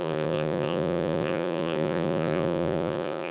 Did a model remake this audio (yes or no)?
yes